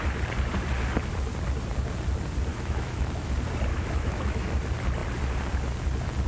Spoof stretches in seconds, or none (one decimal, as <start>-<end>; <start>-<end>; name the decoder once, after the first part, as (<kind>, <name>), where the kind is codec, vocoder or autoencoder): 2.5-3.3 (autoencoder, DAC-VAE); 3.7-4.5